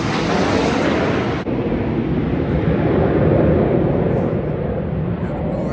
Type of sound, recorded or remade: recorded